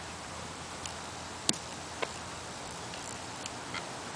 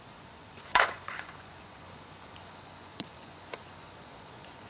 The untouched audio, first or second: first